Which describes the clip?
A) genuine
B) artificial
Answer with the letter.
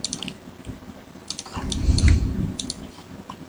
B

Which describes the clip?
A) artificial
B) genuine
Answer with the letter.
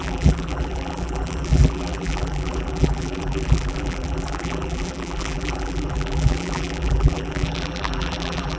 A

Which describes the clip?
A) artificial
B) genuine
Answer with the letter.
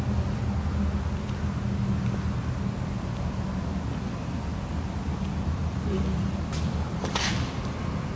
B